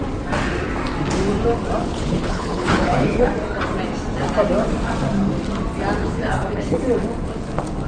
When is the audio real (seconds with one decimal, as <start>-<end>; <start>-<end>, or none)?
0.0-1.8; 3.3-6.0; 6.8-7.9